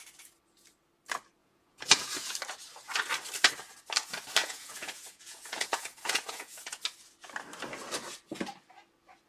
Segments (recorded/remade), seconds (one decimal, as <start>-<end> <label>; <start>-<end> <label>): 0.0-1.4 recorded; 1.4-2.3 remade; 2.3-4.4 recorded; 4.4-6.8 remade; 6.8-9.3 recorded